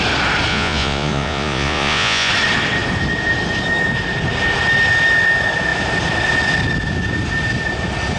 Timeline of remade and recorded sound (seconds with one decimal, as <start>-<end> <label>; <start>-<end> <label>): 0.0-0.5 recorded; 0.5-2.3 remade; 2.3-8.2 recorded